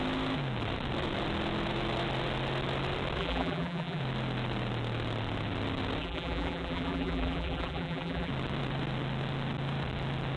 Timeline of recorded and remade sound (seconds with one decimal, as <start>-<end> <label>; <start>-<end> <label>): 0.0-3.2 recorded; 3.2-4.0 remade; 4.0-6.0 recorded; 6.0-8.3 remade; 8.3-10.4 recorded